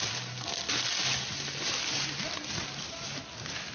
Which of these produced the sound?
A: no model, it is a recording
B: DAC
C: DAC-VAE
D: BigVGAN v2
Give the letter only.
A